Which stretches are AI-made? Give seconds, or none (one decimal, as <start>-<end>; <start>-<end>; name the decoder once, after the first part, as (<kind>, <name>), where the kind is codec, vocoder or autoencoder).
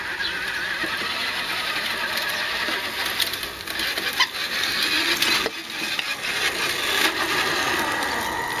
none